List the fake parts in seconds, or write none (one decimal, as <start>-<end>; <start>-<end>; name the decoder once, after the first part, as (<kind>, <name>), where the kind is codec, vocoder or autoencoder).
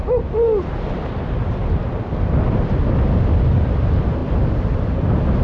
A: none